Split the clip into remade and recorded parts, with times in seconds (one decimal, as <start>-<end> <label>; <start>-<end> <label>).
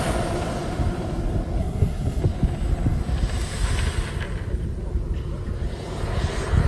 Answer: 0.0-1.6 recorded; 1.6-2.2 remade; 2.2-6.7 recorded